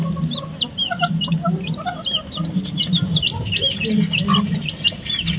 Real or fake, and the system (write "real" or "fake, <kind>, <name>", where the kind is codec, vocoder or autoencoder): real